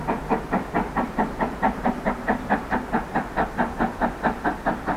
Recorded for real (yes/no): yes